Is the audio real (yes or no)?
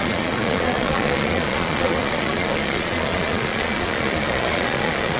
no